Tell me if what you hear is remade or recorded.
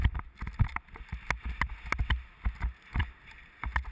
recorded